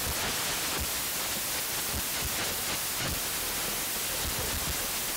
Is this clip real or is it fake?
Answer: real